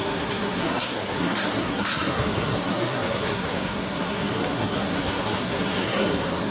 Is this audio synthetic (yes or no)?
yes